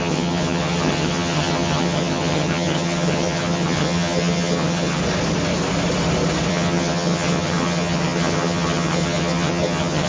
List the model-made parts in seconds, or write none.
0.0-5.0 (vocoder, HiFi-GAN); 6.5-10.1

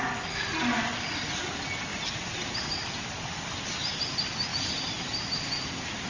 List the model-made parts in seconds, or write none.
1.9-2.5 (vocoder, BigVGAN v2); 4.5-5.1